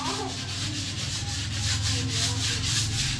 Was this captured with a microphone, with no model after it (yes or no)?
yes